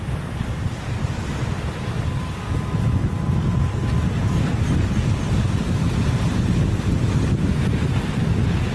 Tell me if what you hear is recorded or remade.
recorded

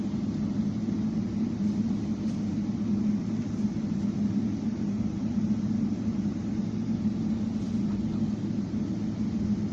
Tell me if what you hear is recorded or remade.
recorded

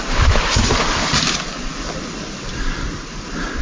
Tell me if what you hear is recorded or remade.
remade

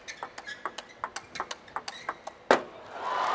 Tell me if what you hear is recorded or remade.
recorded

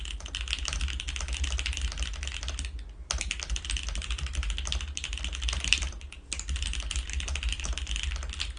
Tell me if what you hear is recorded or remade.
recorded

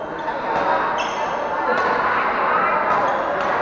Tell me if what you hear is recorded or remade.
recorded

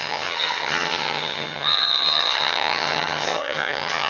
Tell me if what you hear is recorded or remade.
remade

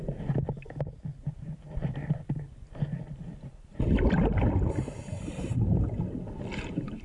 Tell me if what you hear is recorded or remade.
recorded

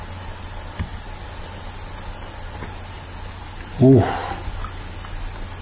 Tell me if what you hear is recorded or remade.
recorded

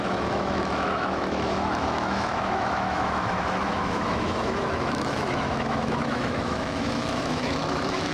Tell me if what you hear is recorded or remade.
remade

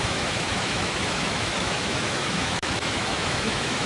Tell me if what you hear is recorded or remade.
remade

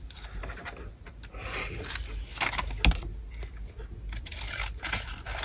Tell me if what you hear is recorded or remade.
recorded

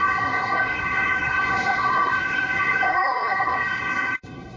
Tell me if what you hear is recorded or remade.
remade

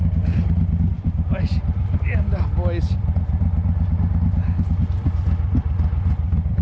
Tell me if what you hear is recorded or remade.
recorded